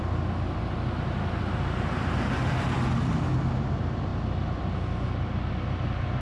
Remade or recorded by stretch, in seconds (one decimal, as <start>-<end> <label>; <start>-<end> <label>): 0.0-6.2 recorded